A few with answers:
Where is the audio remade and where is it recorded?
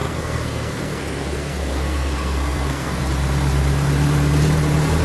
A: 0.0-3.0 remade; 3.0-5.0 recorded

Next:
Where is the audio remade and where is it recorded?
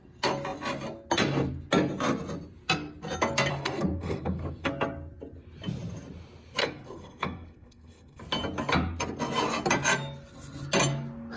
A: 0.0-3.5 recorded; 3.5-4.7 remade; 4.7-6.6 recorded; 6.6-8.2 remade; 8.2-11.4 recorded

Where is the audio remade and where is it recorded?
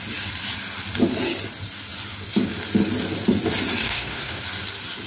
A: 0.0-3.8 recorded; 3.8-4.4 remade; 4.4-5.1 recorded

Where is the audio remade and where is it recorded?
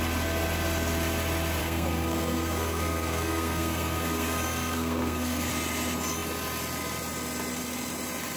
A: 0.0-1.6 recorded; 1.6-5.5 remade; 5.5-8.4 recorded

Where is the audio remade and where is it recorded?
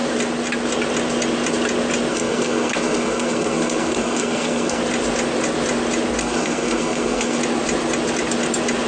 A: 0.0-2.1 recorded; 2.1-4.8 remade; 4.8-6.2 recorded; 6.2-7.4 remade; 7.4-8.9 recorded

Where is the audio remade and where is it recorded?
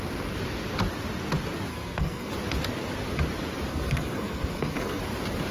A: 0.0-1.7 recorded; 1.7-2.3 remade; 2.3-3.7 recorded; 3.7-5.0 remade; 5.0-5.5 recorded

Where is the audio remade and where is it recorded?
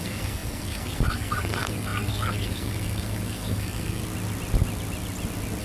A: 0.0-4.0 remade; 4.0-5.6 recorded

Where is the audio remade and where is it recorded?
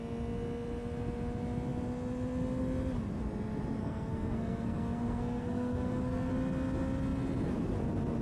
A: 0.0-3.8 recorded; 3.8-6.3 remade; 6.3-8.2 recorded